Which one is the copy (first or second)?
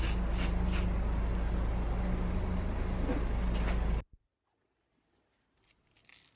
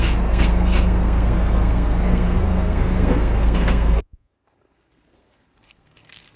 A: second